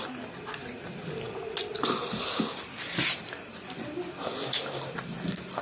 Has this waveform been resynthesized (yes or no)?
no